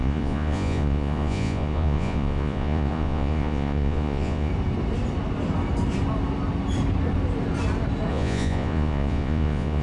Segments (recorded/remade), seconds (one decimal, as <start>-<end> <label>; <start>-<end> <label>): 0.0-4.5 remade; 4.5-8.1 recorded; 8.1-9.8 remade